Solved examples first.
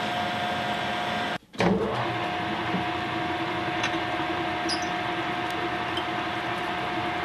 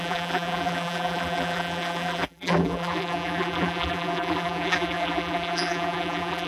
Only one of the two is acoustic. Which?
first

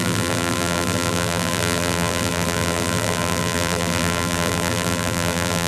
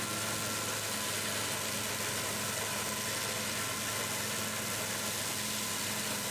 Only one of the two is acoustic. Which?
second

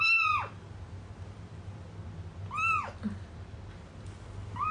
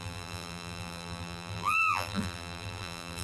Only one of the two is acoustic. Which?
first